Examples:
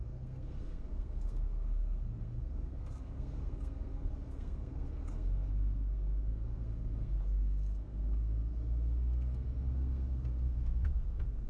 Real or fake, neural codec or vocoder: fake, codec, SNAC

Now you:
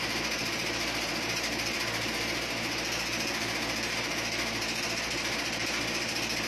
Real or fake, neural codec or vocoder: fake, vocoder, BigVGAN v2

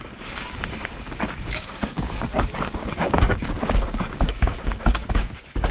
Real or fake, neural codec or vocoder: fake, codec, DAC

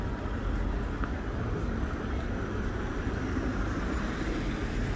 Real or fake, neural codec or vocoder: real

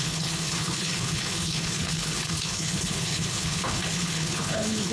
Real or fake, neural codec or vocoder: fake, codec, HILCodec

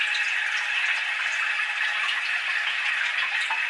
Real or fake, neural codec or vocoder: real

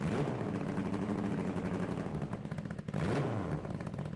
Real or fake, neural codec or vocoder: real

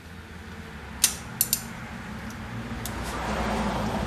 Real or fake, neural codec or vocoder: real